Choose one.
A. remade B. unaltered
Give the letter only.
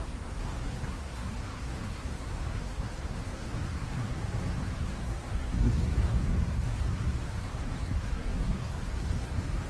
A